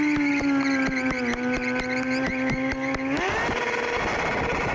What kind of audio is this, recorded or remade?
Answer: recorded